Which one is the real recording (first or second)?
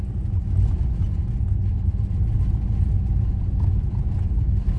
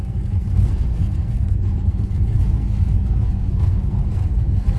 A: first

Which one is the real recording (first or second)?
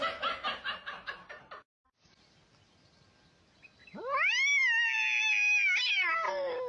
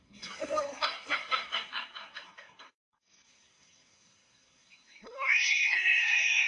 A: first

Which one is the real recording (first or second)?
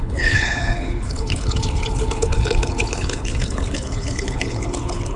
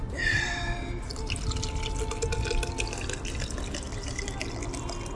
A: second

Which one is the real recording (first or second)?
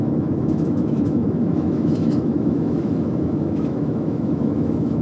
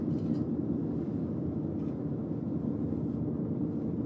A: second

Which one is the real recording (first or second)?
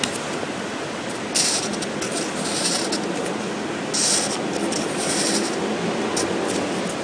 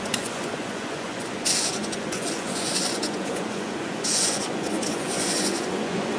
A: first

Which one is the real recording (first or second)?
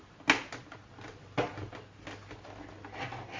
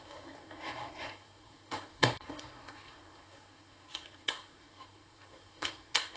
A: first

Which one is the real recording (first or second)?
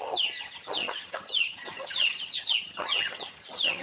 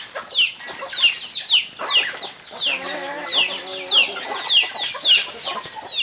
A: second